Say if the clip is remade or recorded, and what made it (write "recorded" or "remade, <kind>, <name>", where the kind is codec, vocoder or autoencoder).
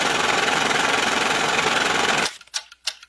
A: recorded